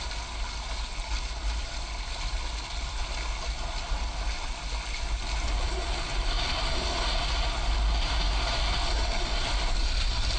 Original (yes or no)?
yes